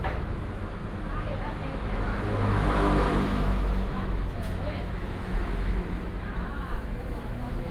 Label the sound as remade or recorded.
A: remade